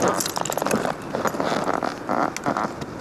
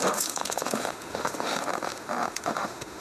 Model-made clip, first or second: second